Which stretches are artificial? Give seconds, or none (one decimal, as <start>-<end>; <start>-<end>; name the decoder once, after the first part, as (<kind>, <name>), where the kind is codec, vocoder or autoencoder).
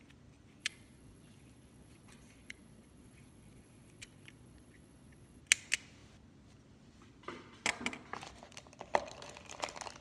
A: 0.6-5.4 (vocoder, Vocos)